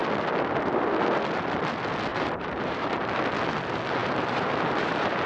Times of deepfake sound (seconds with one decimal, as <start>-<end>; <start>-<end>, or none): 2.1-3.2; 4.0-5.3